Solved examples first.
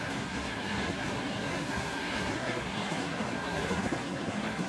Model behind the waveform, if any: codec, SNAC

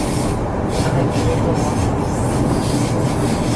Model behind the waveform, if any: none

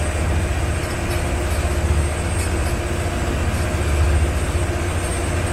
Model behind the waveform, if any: none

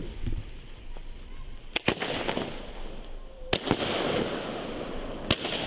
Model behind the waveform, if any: none